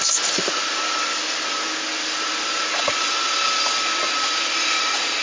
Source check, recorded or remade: recorded